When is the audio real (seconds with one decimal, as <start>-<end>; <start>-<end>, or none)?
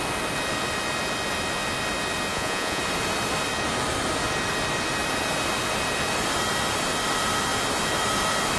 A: 0.0-2.3; 2.8-8.6